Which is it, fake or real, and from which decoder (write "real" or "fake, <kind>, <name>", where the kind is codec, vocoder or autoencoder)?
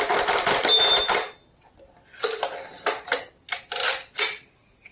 real